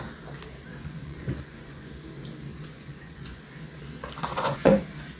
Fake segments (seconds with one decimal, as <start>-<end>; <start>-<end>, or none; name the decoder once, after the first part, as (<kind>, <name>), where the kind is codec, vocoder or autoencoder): 0.7-1.9 (vocoder, Vocos); 2.5-3.4; 4.3-4.8